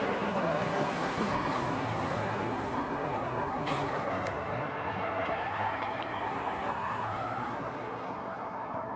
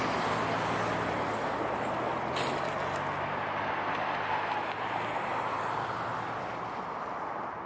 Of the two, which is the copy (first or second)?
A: first